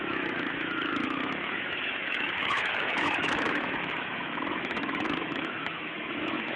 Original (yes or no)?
no